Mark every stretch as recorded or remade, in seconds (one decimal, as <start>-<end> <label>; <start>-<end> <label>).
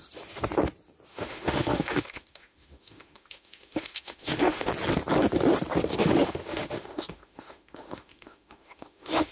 0.0-1.1 recorded; 1.1-4.7 remade; 4.7-5.8 recorded; 5.8-9.3 remade